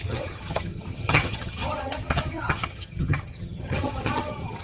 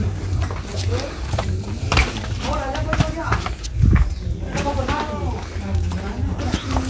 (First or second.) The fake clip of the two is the first